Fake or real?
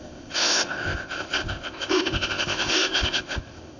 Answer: fake